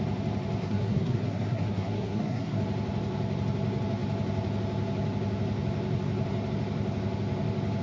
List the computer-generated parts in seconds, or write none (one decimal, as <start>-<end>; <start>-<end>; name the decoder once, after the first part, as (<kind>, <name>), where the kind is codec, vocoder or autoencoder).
0.6-2.6 (codec, SNAC)